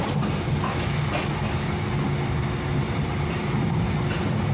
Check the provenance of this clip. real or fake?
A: real